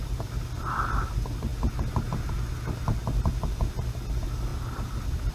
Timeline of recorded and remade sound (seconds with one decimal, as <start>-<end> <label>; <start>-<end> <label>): 0.0-5.3 recorded